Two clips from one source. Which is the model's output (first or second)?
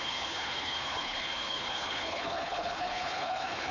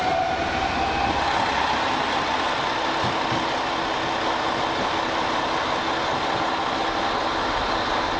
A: first